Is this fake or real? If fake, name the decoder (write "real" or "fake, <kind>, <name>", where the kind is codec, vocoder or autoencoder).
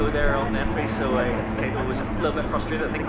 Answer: real